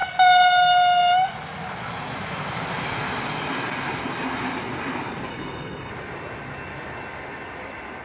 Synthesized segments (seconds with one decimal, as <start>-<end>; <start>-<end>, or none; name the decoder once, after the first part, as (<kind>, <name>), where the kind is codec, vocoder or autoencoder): 5.3-5.9 (codec, HILCodec)